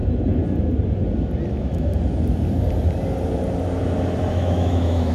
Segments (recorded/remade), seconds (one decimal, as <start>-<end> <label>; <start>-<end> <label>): 0.0-1.5 recorded; 1.5-1.9 remade; 1.9-4.3 recorded; 4.3-5.1 remade